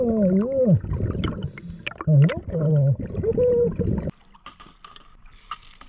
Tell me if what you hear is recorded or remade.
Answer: recorded